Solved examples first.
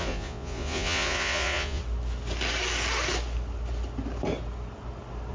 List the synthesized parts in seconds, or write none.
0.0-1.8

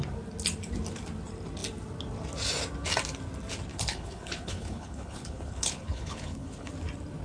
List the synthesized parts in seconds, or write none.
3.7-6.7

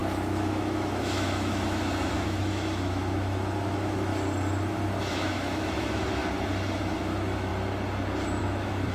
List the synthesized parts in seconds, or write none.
0.0-4.1; 5.0-6.2; 6.8-7.5; 8.4-8.9